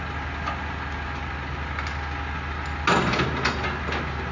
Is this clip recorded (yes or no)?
yes